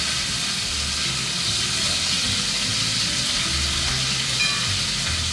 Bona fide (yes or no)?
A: yes